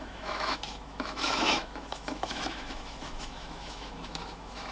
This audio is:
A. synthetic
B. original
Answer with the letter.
A